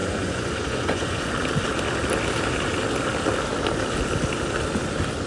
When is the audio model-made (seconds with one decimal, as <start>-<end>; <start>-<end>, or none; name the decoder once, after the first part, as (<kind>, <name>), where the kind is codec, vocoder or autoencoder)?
0.0-1.3 (vocoder, Vocos)